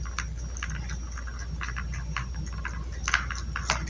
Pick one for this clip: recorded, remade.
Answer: recorded